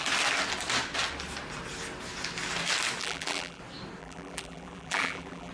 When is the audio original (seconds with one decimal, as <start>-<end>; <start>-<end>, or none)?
0.0-3.0; 3.6-4.0